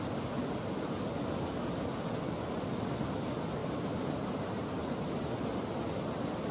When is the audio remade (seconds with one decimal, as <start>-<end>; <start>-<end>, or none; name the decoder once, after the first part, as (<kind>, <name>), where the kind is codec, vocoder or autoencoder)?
none